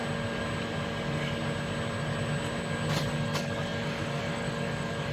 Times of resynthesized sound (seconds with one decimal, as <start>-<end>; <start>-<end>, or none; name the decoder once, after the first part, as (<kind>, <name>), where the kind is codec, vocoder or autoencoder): 3.1-5.1 (codec, DAC)